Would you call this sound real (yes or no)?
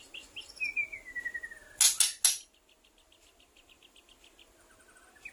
yes